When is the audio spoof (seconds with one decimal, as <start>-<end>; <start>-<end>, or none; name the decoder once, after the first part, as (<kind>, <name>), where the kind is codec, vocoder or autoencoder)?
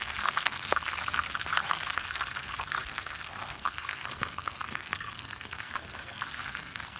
0.0-7.0 (codec, SNAC)